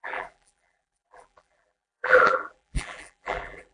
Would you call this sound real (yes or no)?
no